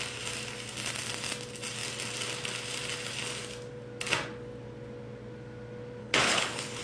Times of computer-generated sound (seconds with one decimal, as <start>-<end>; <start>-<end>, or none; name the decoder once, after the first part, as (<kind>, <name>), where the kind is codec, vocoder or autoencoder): 6.0-6.8 (codec, HILCodec)